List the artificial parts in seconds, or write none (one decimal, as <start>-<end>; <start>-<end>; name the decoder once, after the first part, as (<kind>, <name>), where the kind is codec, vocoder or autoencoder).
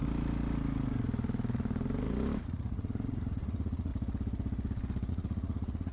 2.4-3.9 (vocoder, Vocos); 5.1-5.9